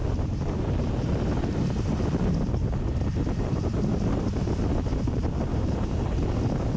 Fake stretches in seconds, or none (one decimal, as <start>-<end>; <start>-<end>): 4.9-5.9